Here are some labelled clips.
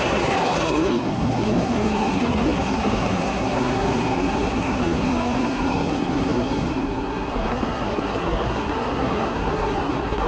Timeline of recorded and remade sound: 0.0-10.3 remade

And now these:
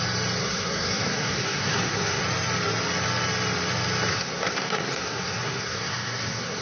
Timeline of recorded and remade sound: 0.0-0.4 recorded; 0.4-2.2 remade; 2.2-4.1 recorded; 4.1-6.6 remade

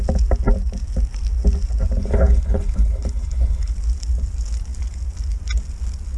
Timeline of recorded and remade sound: 0.0-2.0 recorded; 2.0-3.7 remade; 3.7-6.2 recorded

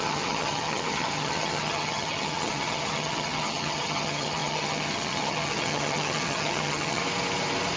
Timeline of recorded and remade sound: 0.0-7.0 remade; 7.0-7.8 recorded

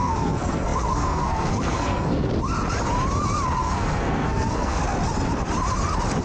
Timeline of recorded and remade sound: 0.0-2.3 remade; 2.3-3.6 recorded; 3.6-4.8 remade; 4.8-6.2 recorded

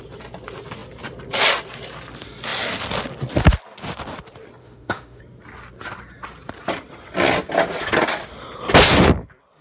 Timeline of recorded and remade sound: 0.0-4.6 recorded; 4.6-5.2 remade; 5.2-9.6 recorded

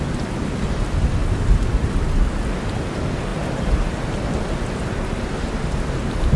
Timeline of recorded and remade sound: 0.0-3.3 recorded; 3.3-4.4 remade; 4.4-6.4 recorded